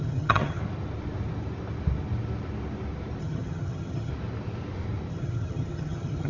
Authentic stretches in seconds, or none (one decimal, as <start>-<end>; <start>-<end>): 0.6-3.2; 4.1-5.1